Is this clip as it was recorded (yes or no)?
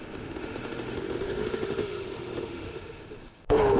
no